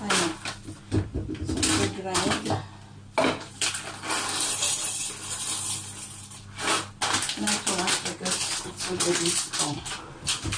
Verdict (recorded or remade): recorded